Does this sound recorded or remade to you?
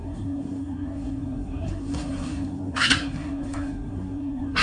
remade